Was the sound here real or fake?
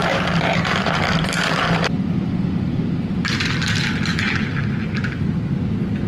real